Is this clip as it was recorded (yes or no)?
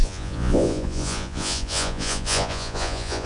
no